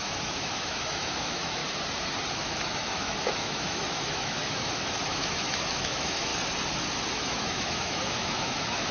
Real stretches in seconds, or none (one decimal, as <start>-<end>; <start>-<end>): 1.6-2.3; 6.3-7.1